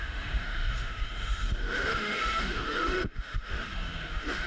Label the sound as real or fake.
fake